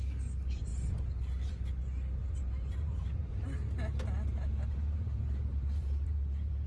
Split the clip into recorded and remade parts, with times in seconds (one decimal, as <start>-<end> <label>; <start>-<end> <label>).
0.0-2.2 recorded; 2.2-3.4 remade; 3.4-4.3 recorded; 4.3-6.7 remade